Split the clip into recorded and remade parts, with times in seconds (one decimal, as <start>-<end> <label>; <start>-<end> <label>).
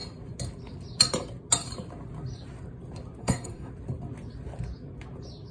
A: 0.0-3.2 recorded; 3.2-3.7 remade; 3.7-5.5 recorded